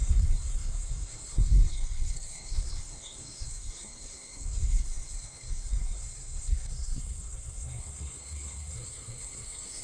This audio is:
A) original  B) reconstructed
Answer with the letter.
B